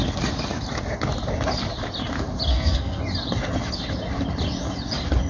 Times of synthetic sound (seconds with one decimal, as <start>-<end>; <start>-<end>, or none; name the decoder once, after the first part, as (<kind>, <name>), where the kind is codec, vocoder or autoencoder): 2.5-3.0 (codec, SNAC)